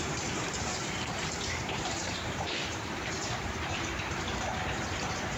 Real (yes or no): no